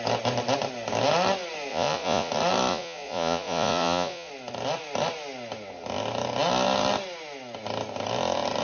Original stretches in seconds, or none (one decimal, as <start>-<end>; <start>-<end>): 0.0-1.7; 2.3-2.7; 4.3-8.6